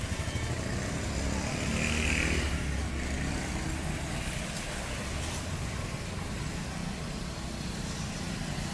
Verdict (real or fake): real